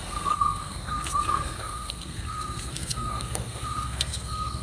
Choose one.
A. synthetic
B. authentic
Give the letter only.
A